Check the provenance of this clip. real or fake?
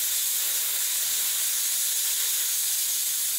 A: real